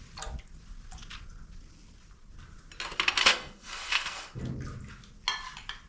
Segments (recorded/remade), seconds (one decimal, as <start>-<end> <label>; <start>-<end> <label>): 0.0-3.2 recorded; 3.2-4.4 remade; 4.4-5.9 recorded